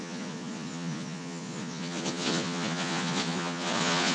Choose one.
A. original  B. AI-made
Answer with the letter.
B